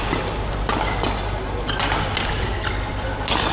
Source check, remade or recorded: recorded